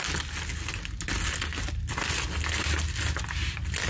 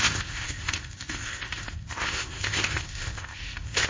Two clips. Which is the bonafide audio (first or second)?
first